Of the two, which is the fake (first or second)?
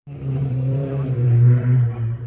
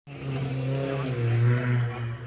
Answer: first